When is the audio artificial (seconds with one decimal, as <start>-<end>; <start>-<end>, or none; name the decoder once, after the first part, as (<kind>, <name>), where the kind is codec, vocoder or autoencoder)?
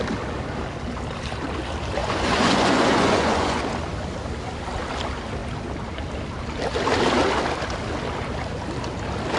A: 2.0-3.6 (vocoder, Vocos)